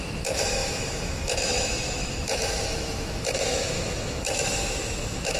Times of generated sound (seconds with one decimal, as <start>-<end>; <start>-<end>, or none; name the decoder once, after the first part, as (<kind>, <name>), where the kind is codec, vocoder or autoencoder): 0.0-5.4 (autoencoder, DAC-VAE)